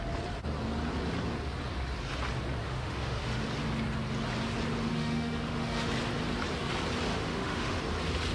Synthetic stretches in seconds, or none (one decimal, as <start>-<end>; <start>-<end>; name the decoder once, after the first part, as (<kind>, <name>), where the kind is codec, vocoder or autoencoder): 2.6-3.2 (autoencoder, DAC-VAE); 4.9-5.9; 7.1-7.8